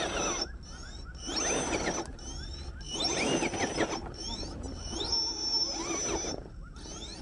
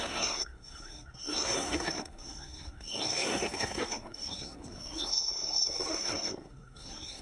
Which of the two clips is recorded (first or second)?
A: first